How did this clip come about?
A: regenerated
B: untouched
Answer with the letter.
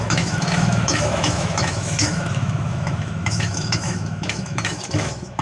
A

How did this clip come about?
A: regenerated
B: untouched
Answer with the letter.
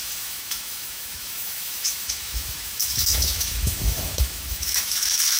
A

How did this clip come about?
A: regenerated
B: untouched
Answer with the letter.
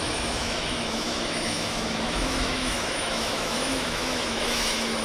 A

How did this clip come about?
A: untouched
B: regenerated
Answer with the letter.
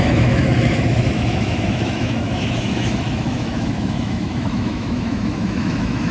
B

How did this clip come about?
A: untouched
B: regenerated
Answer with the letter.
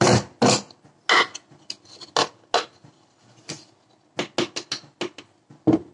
A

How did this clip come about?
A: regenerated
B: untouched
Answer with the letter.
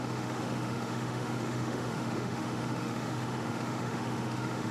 A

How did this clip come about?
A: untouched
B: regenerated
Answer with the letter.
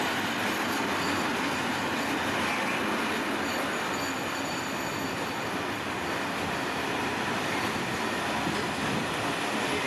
A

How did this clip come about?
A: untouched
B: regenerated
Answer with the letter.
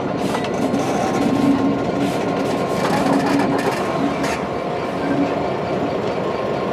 A